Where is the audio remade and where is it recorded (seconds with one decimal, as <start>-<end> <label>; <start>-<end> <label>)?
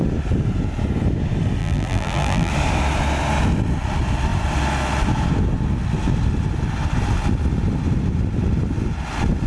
0.0-1.6 recorded; 1.6-2.5 remade; 2.5-9.5 recorded